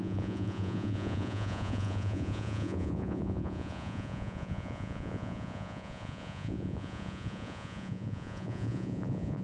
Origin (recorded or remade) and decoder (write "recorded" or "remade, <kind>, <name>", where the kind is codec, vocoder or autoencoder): remade, vocoder, Vocos